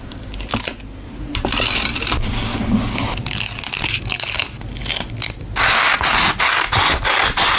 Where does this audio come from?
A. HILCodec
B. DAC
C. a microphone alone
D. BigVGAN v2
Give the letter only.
C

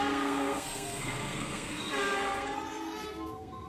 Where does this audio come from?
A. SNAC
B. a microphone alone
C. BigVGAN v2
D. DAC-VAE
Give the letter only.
A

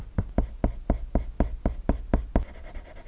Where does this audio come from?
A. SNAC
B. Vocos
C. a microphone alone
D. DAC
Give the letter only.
C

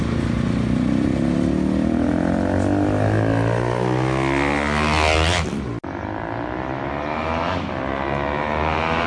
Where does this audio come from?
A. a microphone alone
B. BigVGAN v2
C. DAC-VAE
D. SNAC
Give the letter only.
A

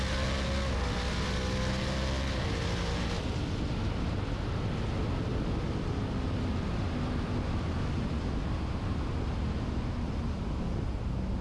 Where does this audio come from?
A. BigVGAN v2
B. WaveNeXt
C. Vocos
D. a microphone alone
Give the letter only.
D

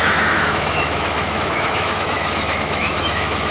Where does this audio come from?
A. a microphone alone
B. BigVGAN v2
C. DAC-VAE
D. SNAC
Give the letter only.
C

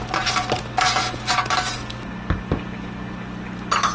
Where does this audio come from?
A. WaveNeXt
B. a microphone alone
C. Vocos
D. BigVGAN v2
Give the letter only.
B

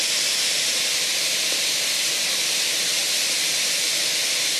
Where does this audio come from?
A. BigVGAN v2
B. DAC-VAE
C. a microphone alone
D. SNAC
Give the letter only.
C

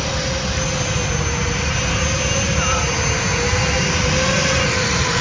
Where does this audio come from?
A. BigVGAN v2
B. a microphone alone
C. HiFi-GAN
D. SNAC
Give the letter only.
B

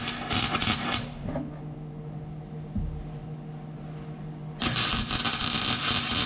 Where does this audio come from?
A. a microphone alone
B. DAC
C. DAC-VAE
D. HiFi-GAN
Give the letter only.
A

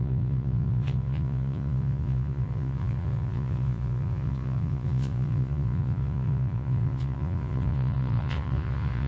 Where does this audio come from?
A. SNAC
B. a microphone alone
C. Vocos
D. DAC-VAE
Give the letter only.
C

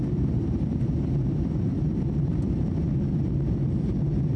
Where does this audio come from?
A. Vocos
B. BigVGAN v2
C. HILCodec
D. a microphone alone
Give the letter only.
B